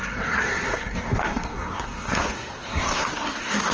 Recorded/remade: remade